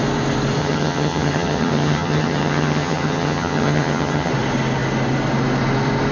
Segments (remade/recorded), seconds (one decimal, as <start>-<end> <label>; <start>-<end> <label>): 0.0-0.6 recorded; 0.6-4.3 remade; 4.3-6.1 recorded